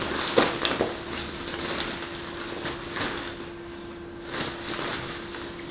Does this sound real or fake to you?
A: real